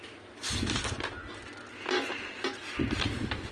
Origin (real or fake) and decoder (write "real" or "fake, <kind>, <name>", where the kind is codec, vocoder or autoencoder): real